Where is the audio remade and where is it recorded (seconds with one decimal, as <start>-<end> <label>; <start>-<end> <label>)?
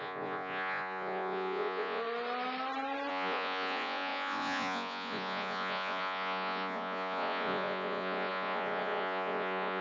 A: 0.0-2.0 remade; 2.0-3.1 recorded; 3.1-9.8 remade